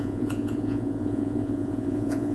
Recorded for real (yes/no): no